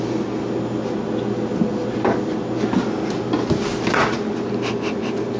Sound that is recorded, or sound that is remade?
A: recorded